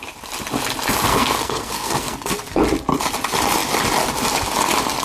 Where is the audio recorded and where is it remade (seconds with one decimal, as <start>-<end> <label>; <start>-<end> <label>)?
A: 0.0-1.1 recorded; 1.1-2.6 remade; 2.6-5.0 recorded